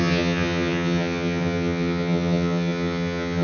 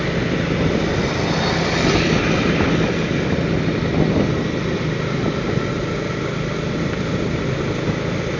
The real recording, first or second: second